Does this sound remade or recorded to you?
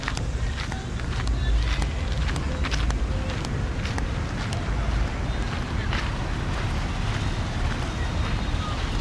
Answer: recorded